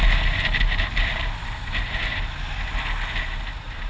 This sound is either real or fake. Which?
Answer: real